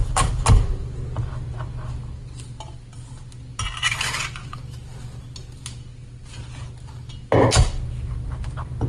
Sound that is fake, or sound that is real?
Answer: real